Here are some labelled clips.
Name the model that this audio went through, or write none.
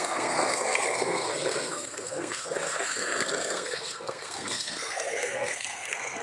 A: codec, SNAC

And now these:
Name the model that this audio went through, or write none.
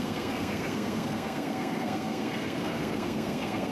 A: codec, SNAC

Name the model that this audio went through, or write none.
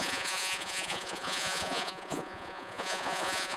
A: vocoder, Vocos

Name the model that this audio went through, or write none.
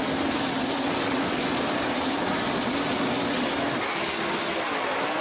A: none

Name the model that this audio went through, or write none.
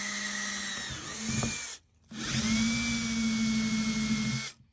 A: none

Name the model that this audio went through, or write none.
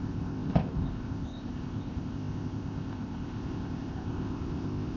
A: codec, ZipCodec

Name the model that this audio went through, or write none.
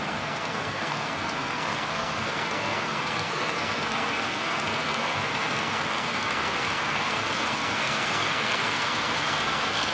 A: codec, SNAC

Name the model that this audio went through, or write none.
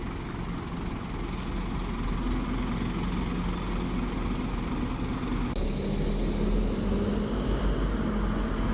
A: none